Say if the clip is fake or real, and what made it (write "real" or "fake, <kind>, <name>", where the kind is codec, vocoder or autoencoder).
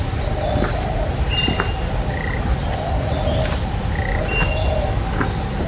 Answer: real